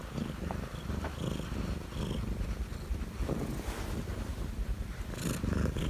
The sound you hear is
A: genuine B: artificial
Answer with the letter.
A